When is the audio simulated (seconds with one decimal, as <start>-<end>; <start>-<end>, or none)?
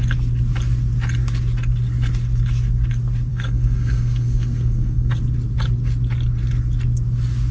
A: 3.3-5.2